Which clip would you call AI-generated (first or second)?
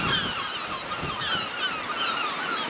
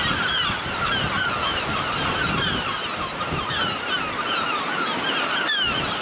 second